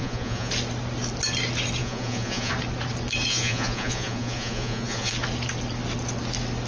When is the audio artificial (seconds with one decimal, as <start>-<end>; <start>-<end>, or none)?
0.0-0.5; 1.8-2.5; 3.3-5.1